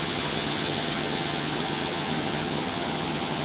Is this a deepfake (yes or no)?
yes